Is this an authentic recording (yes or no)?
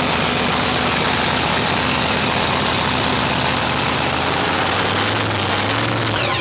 yes